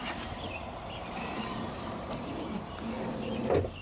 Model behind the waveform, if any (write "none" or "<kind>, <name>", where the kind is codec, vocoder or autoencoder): none